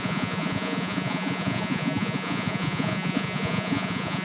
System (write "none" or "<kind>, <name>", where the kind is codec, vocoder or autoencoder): vocoder, Vocos